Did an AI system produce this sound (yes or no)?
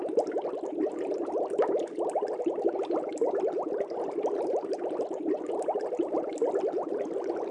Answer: no